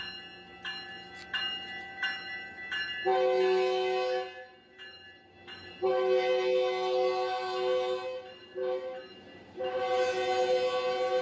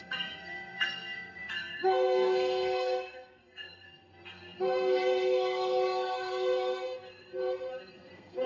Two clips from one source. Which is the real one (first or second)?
first